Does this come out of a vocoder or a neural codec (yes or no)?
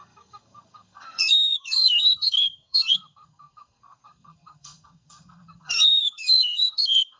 yes